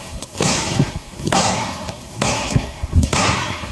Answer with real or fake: fake